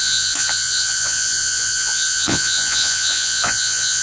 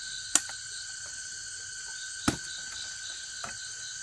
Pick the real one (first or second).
second